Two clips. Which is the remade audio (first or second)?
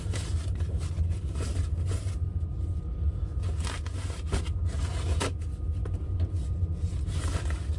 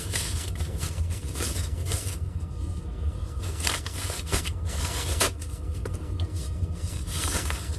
second